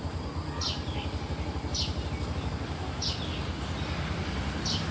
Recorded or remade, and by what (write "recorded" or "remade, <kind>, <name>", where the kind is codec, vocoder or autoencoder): recorded